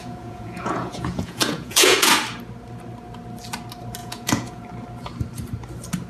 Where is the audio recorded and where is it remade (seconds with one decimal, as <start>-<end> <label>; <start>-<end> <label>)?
0.0-2.1 remade; 2.1-4.0 recorded; 4.0-4.6 remade; 4.6-6.1 recorded